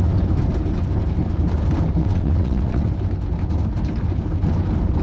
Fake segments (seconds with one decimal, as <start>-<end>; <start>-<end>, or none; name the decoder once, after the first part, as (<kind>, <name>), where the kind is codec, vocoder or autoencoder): 2.0-2.9 (vocoder, WaveNeXt)